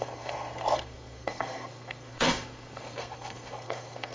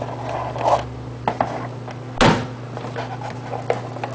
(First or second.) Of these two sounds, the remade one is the first